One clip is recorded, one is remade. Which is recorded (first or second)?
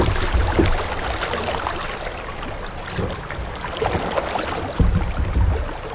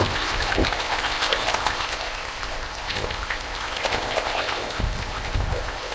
first